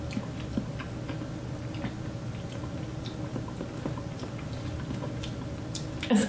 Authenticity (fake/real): real